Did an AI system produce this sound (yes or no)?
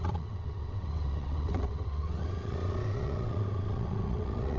yes